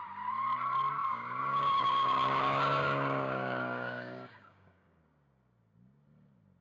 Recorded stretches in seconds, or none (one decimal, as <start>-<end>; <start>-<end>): 0.0-1.0; 5.0-6.6